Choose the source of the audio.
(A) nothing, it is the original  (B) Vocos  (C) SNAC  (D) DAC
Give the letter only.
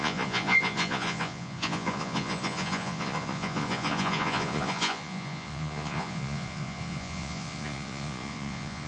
B